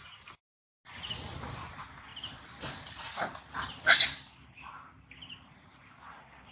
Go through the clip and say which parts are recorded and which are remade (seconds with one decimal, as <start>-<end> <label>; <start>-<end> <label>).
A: 0.0-2.1 recorded; 2.1-5.1 remade; 5.1-6.5 recorded